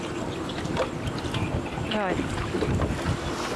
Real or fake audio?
real